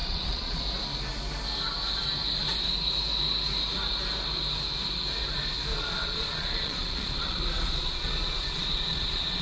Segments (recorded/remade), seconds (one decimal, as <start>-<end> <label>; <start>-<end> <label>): 0.0-0.6 remade; 0.6-5.7 recorded; 5.7-9.4 remade